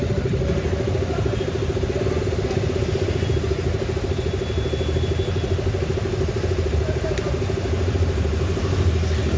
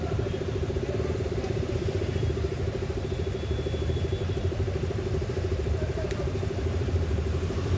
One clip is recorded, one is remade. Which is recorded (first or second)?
first